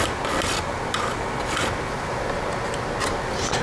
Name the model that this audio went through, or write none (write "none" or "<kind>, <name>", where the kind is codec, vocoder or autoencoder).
none